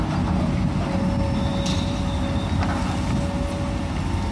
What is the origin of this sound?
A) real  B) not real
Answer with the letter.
A